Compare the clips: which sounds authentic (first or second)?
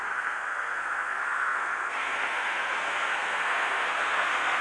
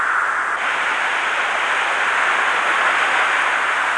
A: second